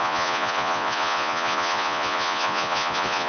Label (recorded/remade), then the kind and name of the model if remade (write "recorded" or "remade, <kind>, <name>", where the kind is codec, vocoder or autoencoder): remade, vocoder, Vocos